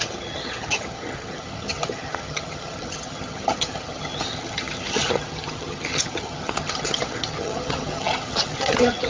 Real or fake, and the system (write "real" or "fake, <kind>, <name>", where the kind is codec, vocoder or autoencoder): fake, vocoder, HiFi-GAN